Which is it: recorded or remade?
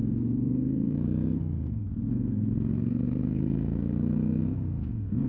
remade